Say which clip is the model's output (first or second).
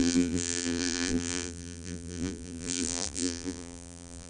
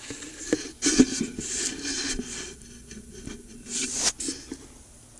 first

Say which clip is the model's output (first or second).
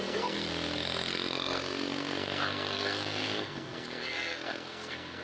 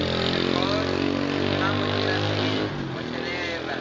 first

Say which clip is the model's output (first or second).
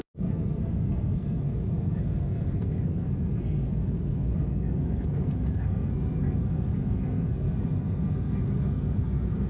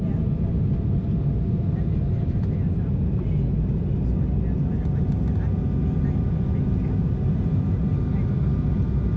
first